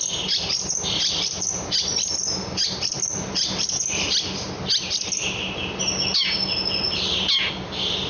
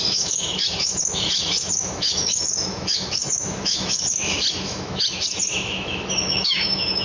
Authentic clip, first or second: first